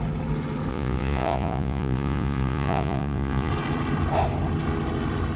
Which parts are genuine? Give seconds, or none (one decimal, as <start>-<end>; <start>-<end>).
0.0-0.7; 3.5-5.4

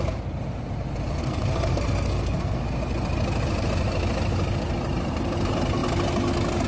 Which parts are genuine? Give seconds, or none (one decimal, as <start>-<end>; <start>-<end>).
0.0-1.2; 2.6-6.7

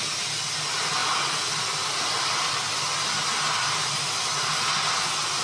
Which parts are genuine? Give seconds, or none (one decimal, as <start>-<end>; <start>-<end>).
0.0-5.4

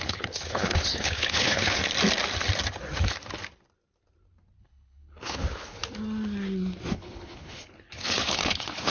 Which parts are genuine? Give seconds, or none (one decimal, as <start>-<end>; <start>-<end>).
1.8-4.6; 5.8-6.9

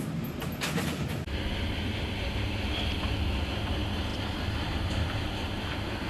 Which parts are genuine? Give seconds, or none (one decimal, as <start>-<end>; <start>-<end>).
0.0-6.1

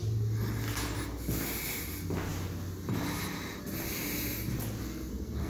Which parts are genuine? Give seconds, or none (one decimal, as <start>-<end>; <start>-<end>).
0.0-4.8

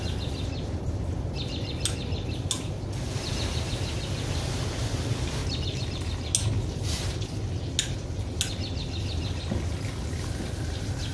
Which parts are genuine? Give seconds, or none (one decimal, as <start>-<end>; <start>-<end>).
0.0-11.1